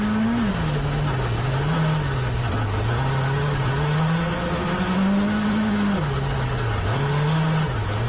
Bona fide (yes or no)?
yes